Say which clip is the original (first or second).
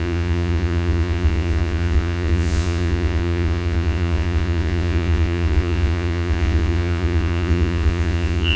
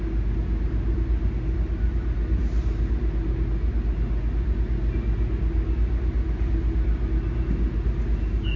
second